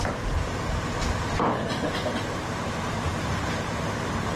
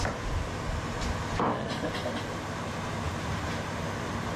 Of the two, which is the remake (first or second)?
first